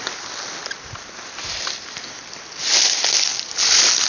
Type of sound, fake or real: real